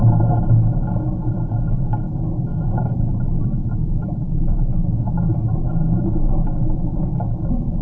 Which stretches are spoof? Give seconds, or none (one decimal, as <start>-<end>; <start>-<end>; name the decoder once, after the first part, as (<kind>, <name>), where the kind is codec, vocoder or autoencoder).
2.5-7.2 (vocoder, BigVGAN v2)